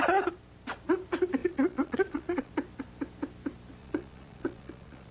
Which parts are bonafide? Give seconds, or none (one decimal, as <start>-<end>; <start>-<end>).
0.0-1.4; 2.5-3.8